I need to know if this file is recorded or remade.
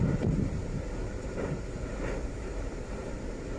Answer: remade